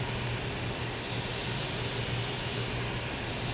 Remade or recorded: recorded